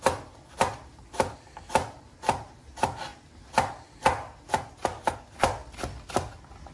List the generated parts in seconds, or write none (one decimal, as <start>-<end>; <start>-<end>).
none